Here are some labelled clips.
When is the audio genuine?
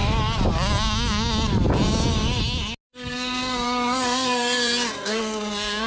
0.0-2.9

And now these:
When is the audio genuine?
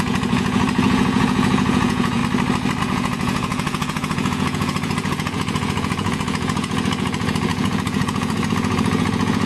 2.2-2.8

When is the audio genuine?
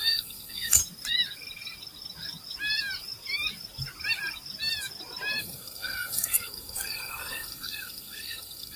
0.8-5.4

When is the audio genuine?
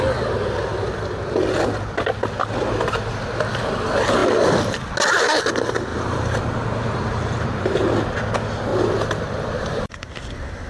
0.0-5.9; 7.8-8.7; 10.1-10.7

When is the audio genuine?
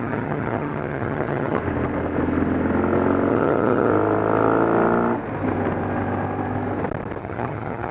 1.6-3.3; 3.9-7.2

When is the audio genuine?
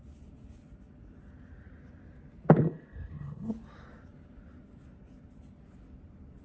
0.0-2.6; 3.5-6.4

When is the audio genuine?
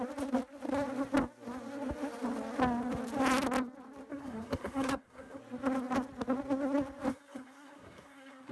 0.0-4.1; 5.4-7.1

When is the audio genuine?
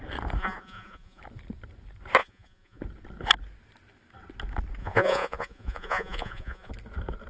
0.0-0.4; 1.2-2.2; 2.8-4.8; 6.7-7.3